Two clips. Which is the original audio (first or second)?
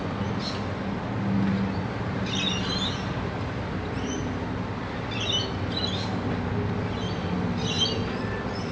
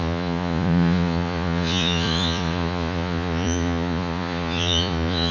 first